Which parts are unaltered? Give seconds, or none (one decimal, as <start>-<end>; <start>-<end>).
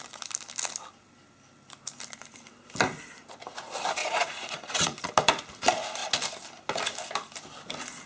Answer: 0.0-4.0; 5.0-8.1